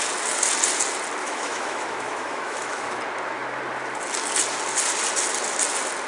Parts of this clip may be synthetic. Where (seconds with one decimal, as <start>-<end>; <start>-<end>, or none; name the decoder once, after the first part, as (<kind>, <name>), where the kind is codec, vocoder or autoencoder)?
1.2-3.0 (autoencoder, DAC-VAE)